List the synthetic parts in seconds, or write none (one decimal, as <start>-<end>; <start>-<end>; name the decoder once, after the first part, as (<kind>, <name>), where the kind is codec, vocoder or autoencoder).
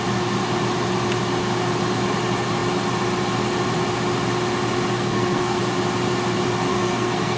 4.9-5.6 (codec, SNAC); 6.7-7.4